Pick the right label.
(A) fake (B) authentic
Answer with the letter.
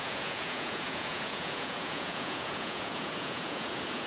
A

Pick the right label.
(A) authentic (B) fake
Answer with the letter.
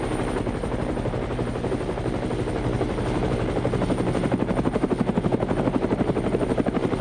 B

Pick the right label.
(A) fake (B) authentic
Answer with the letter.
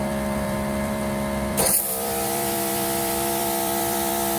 A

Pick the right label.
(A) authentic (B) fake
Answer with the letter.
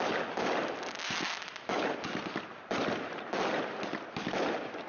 A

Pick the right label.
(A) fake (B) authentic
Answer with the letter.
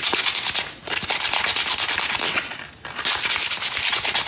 B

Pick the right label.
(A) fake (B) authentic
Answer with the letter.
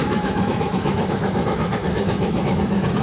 A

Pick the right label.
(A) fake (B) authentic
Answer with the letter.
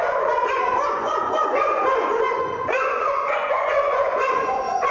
A